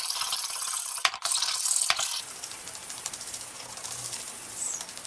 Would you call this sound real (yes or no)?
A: no